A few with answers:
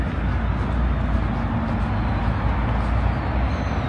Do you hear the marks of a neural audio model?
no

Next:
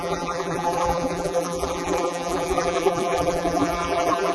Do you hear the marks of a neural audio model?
yes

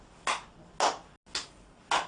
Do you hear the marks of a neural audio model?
no